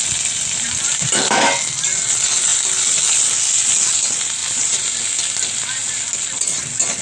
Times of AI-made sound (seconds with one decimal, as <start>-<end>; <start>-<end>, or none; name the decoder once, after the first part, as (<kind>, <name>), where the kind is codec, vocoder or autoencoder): 4.4-5.0 (vocoder, BigVGAN v2)